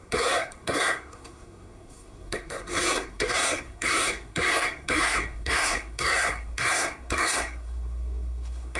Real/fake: fake